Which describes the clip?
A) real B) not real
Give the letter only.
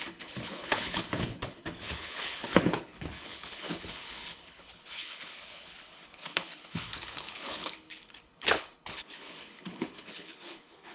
B